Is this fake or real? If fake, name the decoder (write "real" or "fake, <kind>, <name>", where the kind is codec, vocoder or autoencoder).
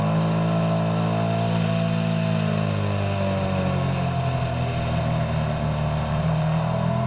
real